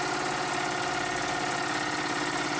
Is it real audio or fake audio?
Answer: real